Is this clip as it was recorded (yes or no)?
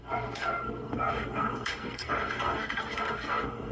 no